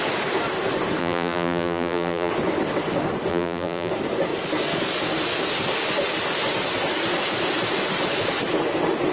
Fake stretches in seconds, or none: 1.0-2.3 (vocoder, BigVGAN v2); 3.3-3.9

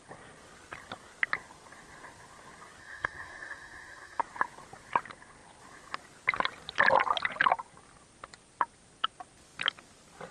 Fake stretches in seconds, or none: 2.8-4.2 (codec, SNAC)